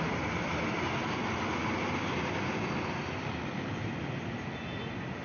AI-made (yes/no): no